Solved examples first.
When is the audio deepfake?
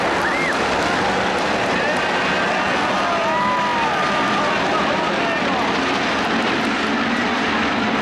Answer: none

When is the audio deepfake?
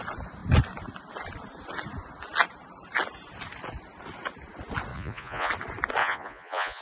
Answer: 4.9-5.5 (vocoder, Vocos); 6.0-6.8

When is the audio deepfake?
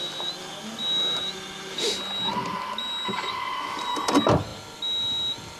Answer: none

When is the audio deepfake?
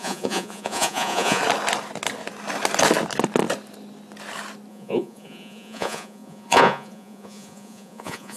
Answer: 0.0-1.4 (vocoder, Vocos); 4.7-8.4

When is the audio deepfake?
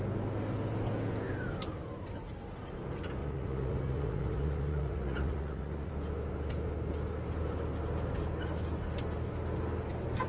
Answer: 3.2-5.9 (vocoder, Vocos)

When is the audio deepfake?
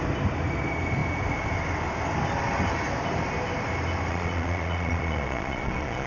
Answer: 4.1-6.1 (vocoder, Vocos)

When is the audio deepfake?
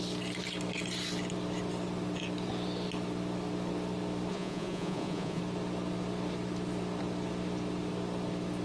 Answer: 4.3-5.4 (vocoder, Vocos)